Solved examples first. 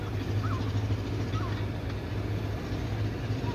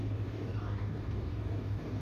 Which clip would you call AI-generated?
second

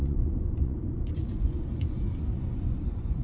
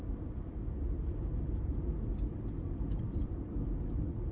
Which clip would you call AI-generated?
first